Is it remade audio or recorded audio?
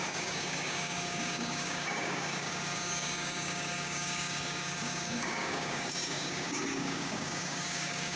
remade